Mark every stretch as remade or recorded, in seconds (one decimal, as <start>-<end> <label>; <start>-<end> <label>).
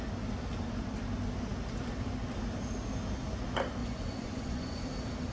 0.0-3.8 recorded; 3.8-4.8 remade; 4.8-5.3 recorded